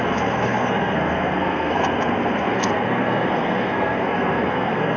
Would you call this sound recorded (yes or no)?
no